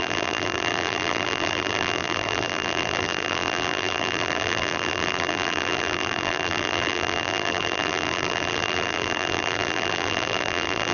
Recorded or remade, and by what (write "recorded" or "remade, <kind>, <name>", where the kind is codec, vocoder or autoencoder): remade, vocoder, BigVGAN v2